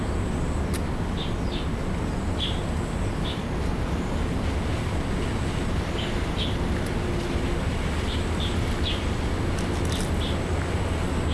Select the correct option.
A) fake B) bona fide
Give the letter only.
B